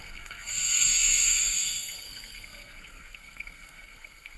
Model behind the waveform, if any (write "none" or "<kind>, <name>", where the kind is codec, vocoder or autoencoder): codec, SNAC